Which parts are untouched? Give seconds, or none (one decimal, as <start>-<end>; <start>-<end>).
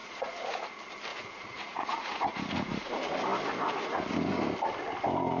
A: 0.6-1.1; 2.9-5.4